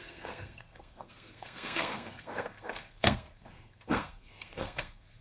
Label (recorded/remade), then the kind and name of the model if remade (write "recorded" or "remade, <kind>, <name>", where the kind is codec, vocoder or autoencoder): remade, codec, SNAC